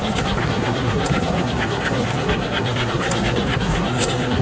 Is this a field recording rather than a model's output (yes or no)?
no